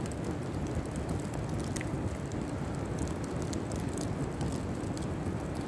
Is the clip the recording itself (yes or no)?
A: yes